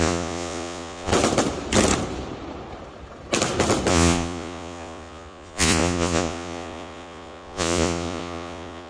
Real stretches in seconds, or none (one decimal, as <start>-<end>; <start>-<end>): 1.1-3.9